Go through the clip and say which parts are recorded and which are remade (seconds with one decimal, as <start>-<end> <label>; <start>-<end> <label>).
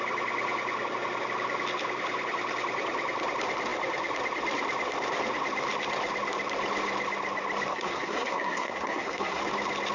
0.0-7.7 recorded; 7.7-9.4 remade; 9.4-9.9 recorded